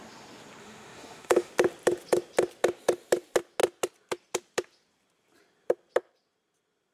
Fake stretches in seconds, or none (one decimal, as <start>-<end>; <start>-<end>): 0.6-1.5